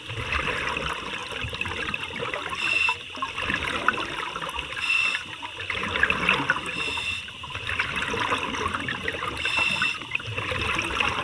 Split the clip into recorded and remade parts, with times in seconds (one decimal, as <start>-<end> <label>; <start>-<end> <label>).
0.0-1.2 recorded; 1.2-2.6 remade; 2.6-5.8 recorded; 5.8-10.3 remade; 10.3-11.2 recorded